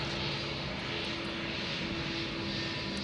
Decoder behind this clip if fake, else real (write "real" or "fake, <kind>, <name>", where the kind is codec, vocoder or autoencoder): real